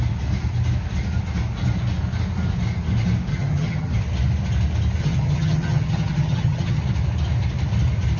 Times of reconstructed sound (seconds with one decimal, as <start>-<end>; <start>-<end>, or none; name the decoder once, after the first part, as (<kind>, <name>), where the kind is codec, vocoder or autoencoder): 3.3-3.9 (vocoder, HiFi-GAN); 5.0-6.8

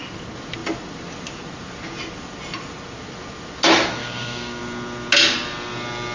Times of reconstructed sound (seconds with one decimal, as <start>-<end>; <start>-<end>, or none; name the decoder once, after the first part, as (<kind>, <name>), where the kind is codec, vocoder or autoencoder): 4.0-4.6 (codec, DAC)

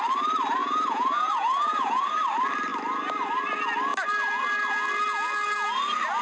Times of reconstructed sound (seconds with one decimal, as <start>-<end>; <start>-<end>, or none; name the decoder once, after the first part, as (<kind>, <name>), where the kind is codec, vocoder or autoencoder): 0.6-2.1 (vocoder, Vocos)

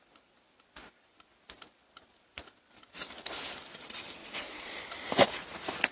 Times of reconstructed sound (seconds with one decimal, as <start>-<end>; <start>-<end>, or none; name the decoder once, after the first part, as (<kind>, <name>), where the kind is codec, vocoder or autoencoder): 4.2-4.8 (vocoder, Vocos)

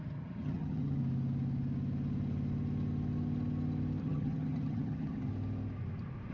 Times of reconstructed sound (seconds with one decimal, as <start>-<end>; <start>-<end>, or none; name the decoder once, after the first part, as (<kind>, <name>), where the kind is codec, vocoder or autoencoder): 0.0-1.0 (vocoder, HiFi-GAN); 4.0-5.3